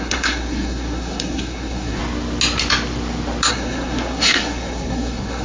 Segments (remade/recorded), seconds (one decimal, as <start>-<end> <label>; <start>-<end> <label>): 0.0-2.0 remade; 2.0-3.5 recorded; 3.5-5.4 remade